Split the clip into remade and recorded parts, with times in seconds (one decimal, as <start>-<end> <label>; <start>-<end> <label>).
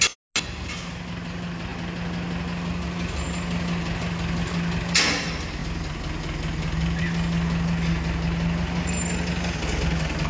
0.0-10.3 recorded